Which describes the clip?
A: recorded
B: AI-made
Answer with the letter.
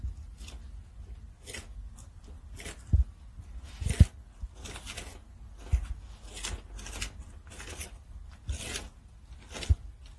A